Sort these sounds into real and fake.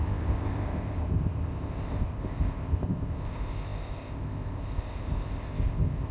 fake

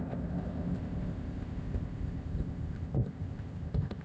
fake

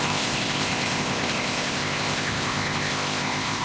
fake